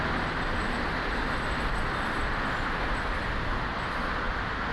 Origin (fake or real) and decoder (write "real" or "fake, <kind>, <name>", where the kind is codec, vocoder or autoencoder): real